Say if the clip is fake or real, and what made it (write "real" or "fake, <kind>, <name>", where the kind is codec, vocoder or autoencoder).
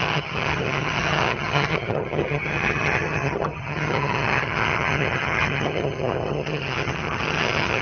fake, vocoder, HiFi-GAN